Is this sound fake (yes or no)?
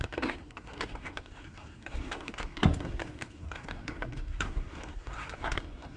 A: yes